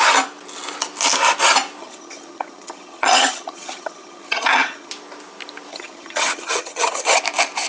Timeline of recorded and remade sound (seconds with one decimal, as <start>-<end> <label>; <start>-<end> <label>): 0.0-1.8 recorded; 1.8-4.9 remade; 4.9-5.7 recorded; 5.7-7.2 remade; 7.2-7.7 recorded